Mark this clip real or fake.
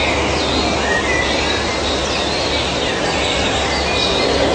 real